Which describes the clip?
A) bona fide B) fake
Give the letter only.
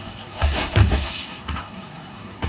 B